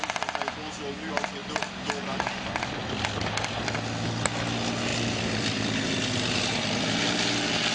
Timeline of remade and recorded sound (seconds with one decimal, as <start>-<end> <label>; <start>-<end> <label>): 0.0-1.4 recorded; 1.4-2.0 remade; 2.0-4.9 recorded; 4.9-6.8 remade; 6.8-7.7 recorded